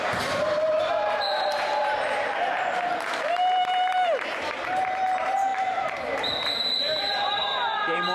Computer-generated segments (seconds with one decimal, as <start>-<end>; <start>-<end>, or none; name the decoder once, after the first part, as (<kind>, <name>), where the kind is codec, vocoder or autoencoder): 0.0-8.1 (vocoder, BigVGAN v2)